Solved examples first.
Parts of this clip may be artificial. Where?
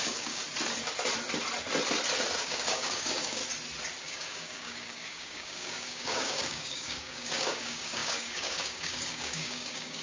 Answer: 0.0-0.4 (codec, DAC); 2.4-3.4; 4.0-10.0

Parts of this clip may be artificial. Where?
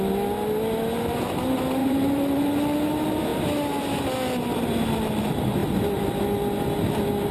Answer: 1.8-2.4 (vocoder, BigVGAN v2)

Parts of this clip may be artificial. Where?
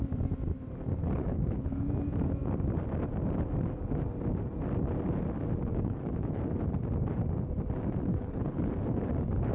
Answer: 1.0-1.9 (codec, HILCodec); 5.7-6.4; 8.1-8.7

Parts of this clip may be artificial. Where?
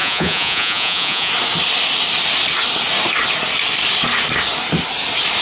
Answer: 0.0-1.3 (vocoder, Vocos)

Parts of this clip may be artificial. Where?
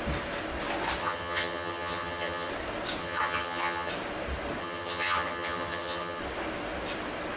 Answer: 1.0-2.5 (vocoder, HiFi-GAN); 3.0-3.9; 4.6-6.2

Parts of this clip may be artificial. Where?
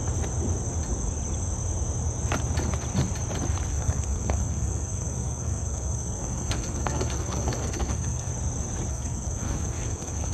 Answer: 3.7-8.3 (codec, SNAC); 8.9-10.3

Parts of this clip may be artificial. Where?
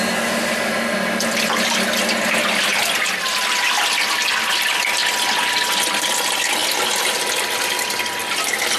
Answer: none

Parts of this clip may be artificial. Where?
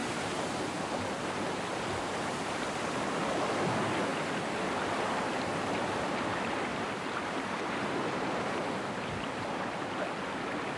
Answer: 0.0-0.6 (vocoder, BigVGAN v2); 6.7-9.6